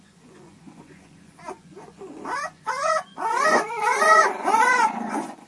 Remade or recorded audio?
remade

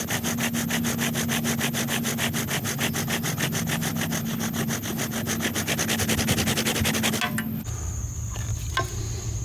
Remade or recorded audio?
recorded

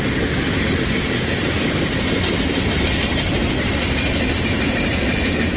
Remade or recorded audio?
remade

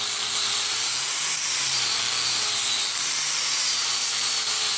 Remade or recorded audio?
recorded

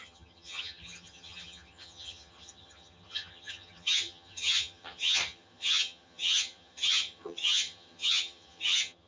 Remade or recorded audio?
remade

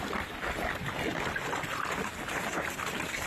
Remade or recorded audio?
recorded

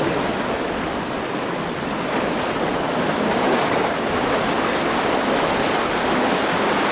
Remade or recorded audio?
recorded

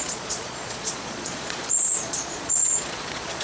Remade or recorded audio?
remade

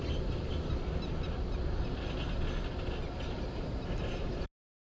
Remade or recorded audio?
recorded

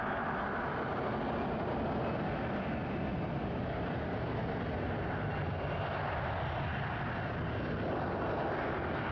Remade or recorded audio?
recorded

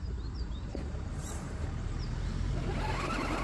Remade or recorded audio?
remade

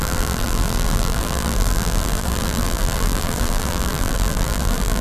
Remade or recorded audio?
remade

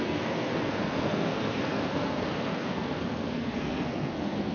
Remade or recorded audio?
remade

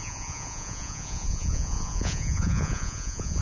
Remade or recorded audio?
remade